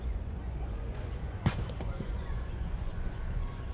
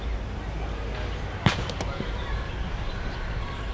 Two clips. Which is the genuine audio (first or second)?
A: second